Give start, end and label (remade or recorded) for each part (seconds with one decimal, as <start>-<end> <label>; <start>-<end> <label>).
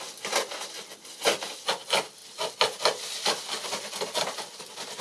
0.0-5.0 recorded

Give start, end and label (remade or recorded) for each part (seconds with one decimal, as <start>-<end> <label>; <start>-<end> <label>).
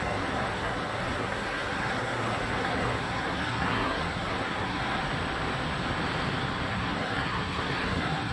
0.0-5.0 remade; 5.0-6.7 recorded; 6.7-8.3 remade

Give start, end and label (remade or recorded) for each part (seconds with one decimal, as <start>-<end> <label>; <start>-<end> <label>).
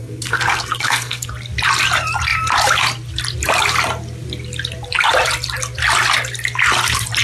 0.0-1.3 remade; 1.3-7.2 recorded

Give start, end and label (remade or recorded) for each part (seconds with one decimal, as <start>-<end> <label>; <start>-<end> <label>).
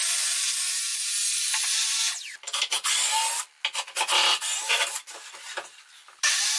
0.0-6.6 recorded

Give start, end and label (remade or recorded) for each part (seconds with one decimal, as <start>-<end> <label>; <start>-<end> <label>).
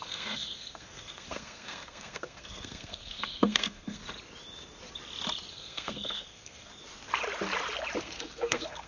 0.0-4.0 remade; 4.0-5.5 recorded; 5.5-6.7 remade; 6.7-8.0 recorded; 8.0-8.9 remade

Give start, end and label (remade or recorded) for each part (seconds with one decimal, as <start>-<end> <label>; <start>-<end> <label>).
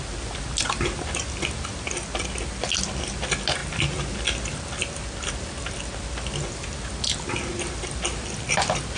0.0-9.0 recorded